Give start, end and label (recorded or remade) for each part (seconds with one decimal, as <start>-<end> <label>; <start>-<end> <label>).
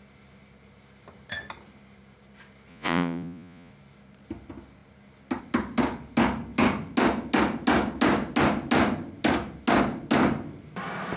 0.0-2.7 recorded; 2.7-3.7 remade; 3.7-11.2 recorded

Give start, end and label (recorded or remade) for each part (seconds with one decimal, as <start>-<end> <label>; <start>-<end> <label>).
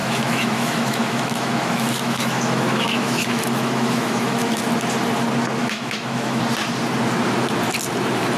0.0-4.6 remade; 4.6-5.6 recorded; 5.6-6.4 remade; 6.4-8.4 recorded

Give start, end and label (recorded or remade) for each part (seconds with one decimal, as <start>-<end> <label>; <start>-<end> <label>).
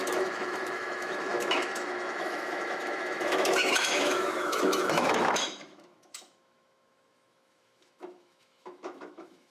0.0-9.5 remade